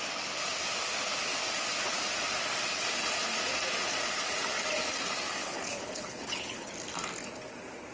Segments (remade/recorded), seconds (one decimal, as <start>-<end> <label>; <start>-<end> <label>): 0.0-5.4 recorded; 5.4-6.7 remade; 6.7-7.9 recorded